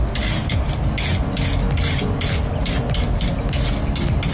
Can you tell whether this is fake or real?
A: real